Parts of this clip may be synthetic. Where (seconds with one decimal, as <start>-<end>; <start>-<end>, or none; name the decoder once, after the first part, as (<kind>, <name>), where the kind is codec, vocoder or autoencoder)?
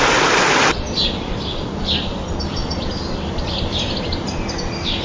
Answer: 2.6-4.0 (vocoder, BigVGAN v2)